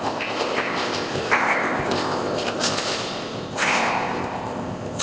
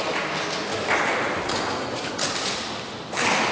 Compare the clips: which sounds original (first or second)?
second